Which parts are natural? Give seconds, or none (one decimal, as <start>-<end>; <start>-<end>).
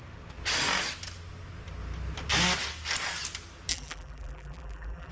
0.0-3.7